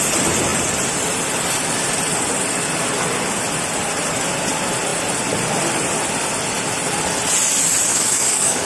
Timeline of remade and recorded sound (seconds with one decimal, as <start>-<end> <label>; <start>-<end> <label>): 0.0-7.9 recorded; 7.9-8.7 remade